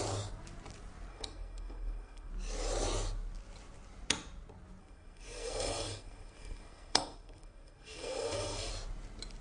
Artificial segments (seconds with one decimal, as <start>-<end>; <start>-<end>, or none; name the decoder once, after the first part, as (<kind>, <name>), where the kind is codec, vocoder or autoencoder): 1.1-2.3 (codec, SNAC); 4.8-8.7